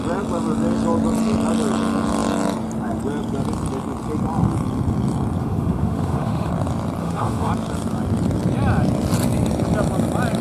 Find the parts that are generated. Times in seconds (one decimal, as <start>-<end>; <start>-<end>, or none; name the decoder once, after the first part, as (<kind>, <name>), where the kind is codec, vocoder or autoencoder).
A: 5.4-6.5 (autoencoder, DAC-VAE); 7.0-7.5